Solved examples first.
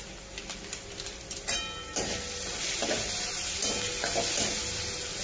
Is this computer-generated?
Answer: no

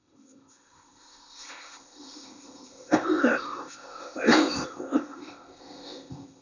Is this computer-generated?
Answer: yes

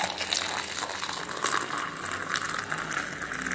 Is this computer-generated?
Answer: no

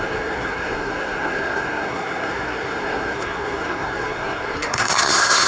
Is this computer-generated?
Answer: yes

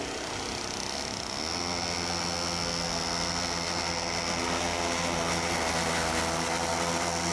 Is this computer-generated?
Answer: no